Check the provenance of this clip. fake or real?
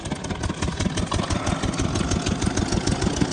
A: real